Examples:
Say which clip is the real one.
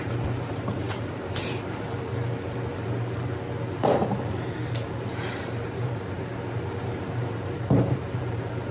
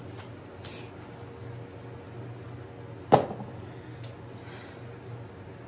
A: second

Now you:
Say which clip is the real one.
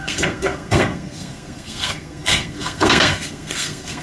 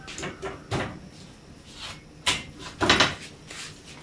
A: second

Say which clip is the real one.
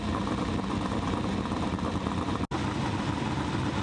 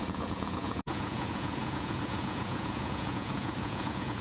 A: first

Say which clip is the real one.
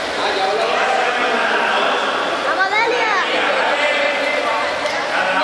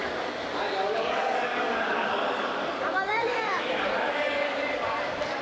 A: first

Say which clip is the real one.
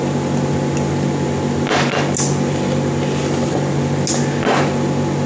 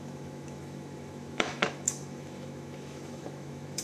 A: first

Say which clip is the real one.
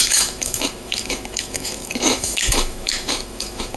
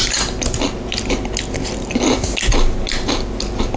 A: second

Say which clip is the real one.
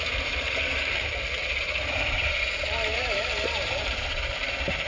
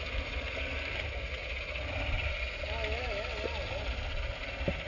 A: second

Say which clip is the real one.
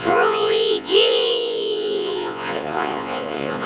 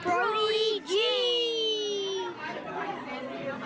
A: second